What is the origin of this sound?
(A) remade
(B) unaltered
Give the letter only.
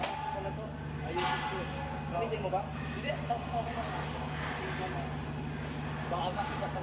B